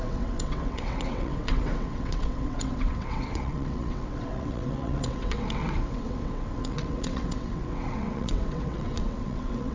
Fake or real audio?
fake